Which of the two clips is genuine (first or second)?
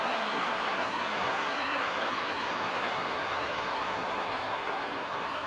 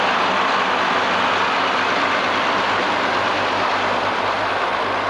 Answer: second